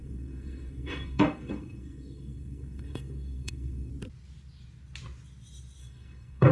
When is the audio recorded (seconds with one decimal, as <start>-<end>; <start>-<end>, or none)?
3.9-5.8